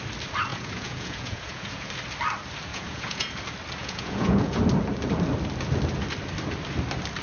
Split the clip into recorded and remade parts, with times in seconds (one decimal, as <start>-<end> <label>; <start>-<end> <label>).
0.0-0.5 recorded; 0.5-1.9 remade; 1.9-2.7 recorded; 2.7-3.3 remade; 3.3-3.8 recorded; 3.8-4.6 remade; 4.6-7.2 recorded